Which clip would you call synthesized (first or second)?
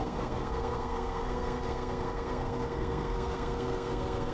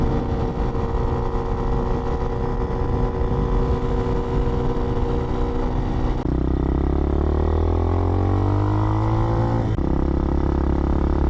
first